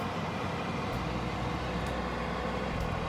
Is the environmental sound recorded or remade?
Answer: recorded